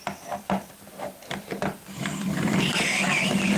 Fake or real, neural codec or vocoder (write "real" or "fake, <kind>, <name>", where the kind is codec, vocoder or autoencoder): fake, vocoder, BigVGAN v2